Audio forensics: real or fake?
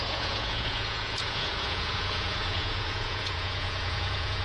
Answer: fake